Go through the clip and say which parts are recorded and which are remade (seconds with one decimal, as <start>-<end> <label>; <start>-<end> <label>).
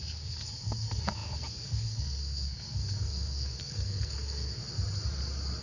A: 0.0-4.6 remade; 4.6-5.6 recorded